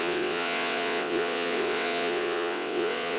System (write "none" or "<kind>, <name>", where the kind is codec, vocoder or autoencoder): vocoder, WaveNeXt